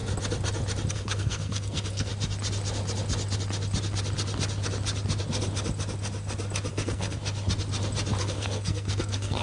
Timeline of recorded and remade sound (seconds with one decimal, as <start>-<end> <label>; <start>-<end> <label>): 0.0-0.9 recorded; 0.9-2.1 remade; 2.1-6.7 recorded; 6.7-7.2 remade; 7.2-8.2 recorded; 8.2-9.4 remade